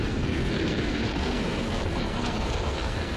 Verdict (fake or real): fake